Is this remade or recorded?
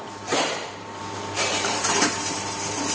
remade